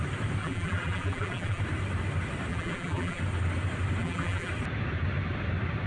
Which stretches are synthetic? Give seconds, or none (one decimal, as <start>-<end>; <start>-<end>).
0.4-1.6; 2.5-3.2; 4.0-4.5